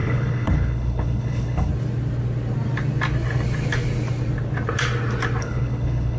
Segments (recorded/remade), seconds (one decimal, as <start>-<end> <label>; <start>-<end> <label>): 0.0-1.7 remade; 1.7-5.4 recorded; 5.4-6.2 remade